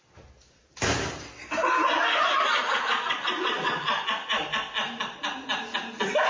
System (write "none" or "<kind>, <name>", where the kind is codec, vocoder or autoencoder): none